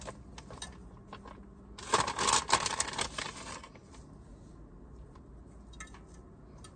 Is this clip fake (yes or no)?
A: no